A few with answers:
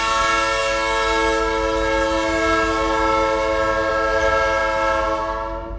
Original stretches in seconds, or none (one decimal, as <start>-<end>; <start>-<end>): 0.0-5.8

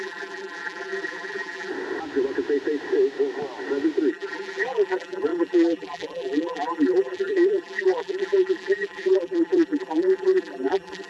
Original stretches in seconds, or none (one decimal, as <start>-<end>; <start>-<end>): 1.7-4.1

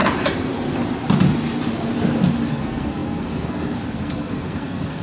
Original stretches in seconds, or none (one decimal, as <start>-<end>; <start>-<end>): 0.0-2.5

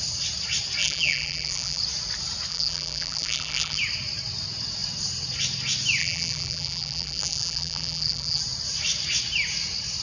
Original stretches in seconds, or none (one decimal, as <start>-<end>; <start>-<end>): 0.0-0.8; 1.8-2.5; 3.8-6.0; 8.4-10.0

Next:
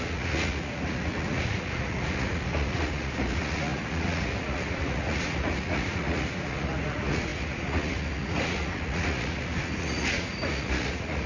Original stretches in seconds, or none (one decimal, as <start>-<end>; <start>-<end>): none

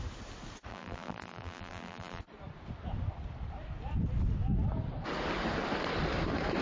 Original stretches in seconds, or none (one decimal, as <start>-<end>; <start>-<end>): 0.0-0.7; 2.2-6.6

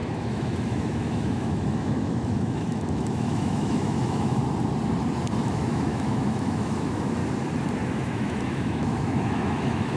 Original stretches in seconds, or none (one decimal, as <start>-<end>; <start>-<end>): 4.4-5.4; 7.2-7.9